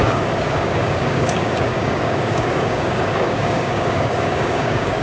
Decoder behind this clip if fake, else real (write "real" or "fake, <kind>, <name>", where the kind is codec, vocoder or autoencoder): fake, codec, DAC